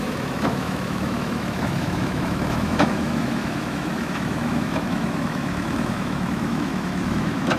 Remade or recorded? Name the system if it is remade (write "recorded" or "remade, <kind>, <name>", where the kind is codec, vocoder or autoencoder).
remade, autoencoder, DAC-VAE